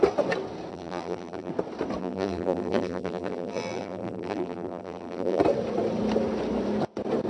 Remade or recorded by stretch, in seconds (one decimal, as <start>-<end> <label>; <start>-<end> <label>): 0.0-0.7 recorded; 0.7-1.5 remade; 1.5-2.0 recorded; 2.0-5.4 remade; 5.4-7.3 recorded